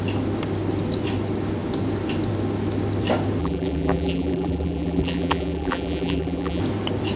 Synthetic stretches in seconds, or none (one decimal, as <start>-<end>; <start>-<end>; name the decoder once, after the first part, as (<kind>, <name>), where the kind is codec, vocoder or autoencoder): 3.4-6.6 (vocoder, BigVGAN v2)